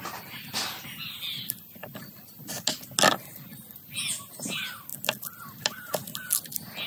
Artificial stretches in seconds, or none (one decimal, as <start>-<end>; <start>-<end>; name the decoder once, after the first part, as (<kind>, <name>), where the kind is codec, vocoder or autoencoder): 1.8-2.6 (vocoder, BigVGAN v2)